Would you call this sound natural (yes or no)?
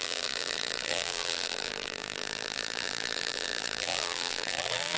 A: no